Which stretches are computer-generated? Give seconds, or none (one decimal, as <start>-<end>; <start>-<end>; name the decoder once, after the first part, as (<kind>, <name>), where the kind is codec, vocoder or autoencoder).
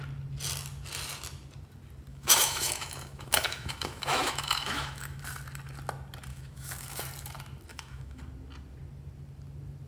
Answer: 2.1-5.2 (autoencoder, DAC-VAE); 6.3-7.0; 7.7-8.2